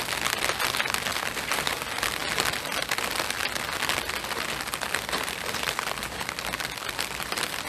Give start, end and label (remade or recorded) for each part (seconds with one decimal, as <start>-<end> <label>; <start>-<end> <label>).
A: 0.0-7.7 recorded